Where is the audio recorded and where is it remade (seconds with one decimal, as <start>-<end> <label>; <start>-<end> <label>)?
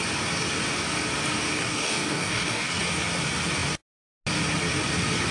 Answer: 0.0-1.6 recorded; 1.6-2.8 remade; 2.8-5.3 recorded